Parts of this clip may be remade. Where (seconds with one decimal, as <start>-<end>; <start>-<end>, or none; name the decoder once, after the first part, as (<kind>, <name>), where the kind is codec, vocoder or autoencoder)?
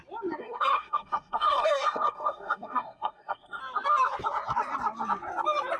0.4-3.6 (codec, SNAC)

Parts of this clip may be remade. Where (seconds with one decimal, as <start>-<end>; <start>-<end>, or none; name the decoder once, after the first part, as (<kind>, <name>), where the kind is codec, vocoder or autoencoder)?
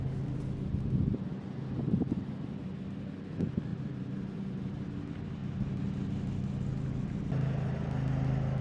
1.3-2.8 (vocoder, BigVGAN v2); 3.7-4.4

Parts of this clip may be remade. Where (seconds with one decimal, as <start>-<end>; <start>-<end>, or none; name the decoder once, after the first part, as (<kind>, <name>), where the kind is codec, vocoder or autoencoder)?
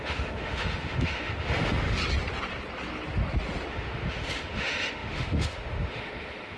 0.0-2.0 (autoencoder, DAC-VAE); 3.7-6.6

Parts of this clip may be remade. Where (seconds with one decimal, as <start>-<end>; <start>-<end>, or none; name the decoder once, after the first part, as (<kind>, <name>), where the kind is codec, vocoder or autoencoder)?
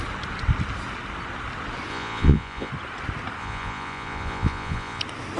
1.9-2.7 (vocoder, Vocos); 3.4-5.0